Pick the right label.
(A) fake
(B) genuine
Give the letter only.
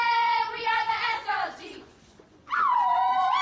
A